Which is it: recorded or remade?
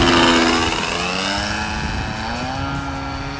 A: recorded